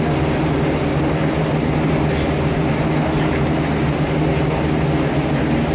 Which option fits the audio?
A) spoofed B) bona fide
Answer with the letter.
B